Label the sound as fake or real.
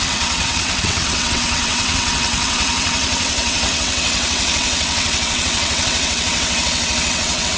fake